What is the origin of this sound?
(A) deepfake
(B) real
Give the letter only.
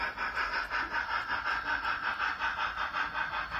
B